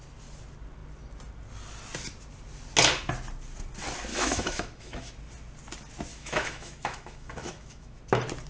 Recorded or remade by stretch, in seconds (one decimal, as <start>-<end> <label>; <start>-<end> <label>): 0.0-4.1 recorded; 4.1-5.1 remade; 5.1-6.1 recorded; 6.1-8.0 remade; 8.0-8.5 recorded